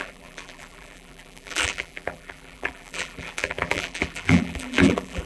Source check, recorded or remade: remade